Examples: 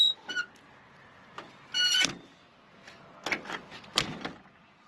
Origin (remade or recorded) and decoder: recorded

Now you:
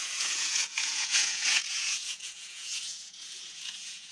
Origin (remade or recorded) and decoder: remade, vocoder, Vocos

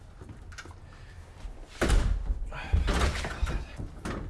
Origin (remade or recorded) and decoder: recorded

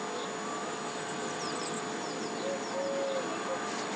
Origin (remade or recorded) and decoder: recorded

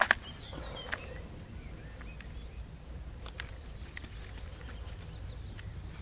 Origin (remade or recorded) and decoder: recorded